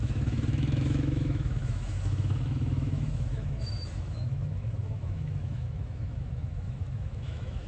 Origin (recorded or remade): remade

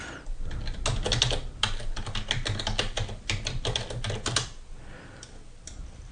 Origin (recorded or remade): recorded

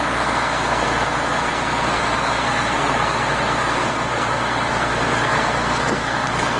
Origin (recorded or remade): remade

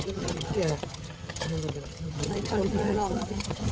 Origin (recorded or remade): remade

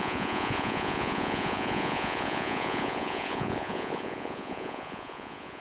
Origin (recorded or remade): remade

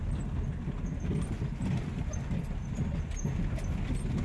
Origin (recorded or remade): recorded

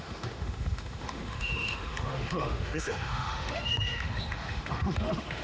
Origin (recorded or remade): remade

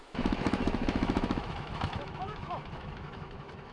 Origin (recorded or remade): remade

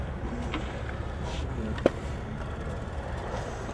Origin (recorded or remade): recorded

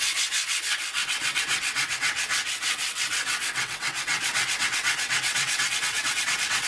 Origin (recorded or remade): remade